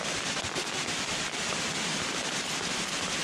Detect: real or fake real